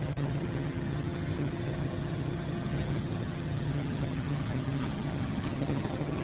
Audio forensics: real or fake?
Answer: fake